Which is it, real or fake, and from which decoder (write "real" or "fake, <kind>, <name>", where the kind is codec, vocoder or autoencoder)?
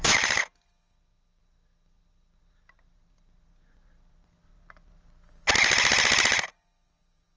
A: real